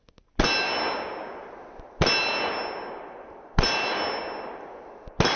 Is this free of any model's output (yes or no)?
yes